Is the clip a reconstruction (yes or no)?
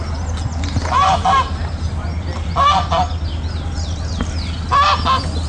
no